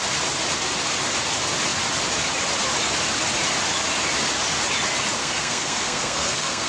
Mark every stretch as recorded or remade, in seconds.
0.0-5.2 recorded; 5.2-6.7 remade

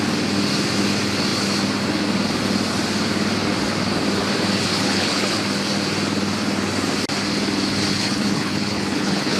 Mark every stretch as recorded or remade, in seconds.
0.0-4.7 recorded; 4.7-5.4 remade; 5.4-7.9 recorded; 7.9-9.4 remade

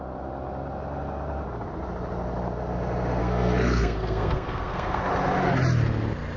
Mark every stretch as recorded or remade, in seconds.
0.0-3.2 recorded; 3.2-5.0 remade; 5.0-6.4 recorded

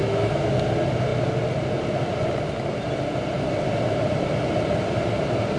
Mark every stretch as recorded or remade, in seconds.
0.0-0.5 remade; 0.5-5.6 recorded